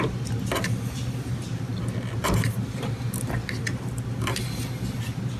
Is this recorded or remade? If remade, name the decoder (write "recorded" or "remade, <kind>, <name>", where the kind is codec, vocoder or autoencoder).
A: recorded